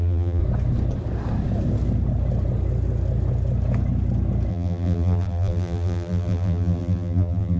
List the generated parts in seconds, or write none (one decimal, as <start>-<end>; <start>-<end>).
0.0-0.4; 4.5-7.6